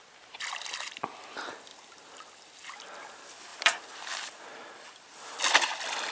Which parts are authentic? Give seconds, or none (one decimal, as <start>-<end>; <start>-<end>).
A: 0.0-3.5; 4.4-6.1